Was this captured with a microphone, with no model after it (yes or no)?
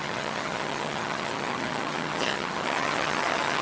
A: no